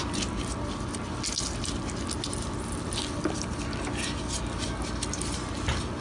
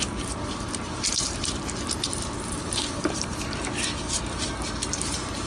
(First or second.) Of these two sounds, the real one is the first